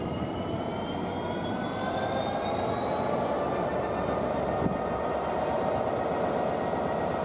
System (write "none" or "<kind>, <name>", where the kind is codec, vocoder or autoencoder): none